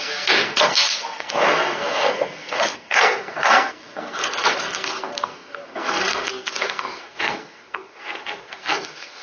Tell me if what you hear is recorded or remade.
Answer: remade